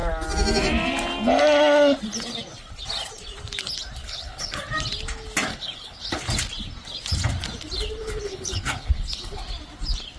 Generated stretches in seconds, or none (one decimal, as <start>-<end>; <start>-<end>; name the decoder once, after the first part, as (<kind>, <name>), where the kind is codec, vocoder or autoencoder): 4.0-4.6 (codec, HILCodec); 5.5-6.2; 8.0-9.4